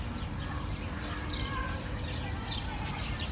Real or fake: real